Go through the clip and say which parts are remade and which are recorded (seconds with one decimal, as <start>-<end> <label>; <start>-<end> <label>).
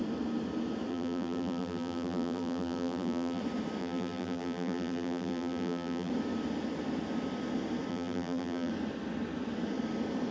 0.0-0.9 recorded; 0.9-3.4 remade; 3.4-3.8 recorded; 3.8-6.1 remade; 6.1-7.9 recorded; 7.9-8.7 remade; 8.7-10.3 recorded